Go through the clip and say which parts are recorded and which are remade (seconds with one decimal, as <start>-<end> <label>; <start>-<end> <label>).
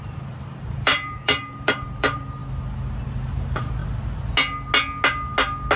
0.0-2.4 remade; 2.4-3.0 recorded; 3.0-3.8 remade; 3.8-5.8 recorded